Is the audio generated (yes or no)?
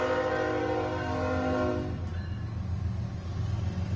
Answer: no